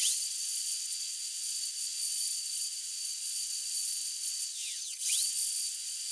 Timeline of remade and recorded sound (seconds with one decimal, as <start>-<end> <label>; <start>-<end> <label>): 0.0-6.1 remade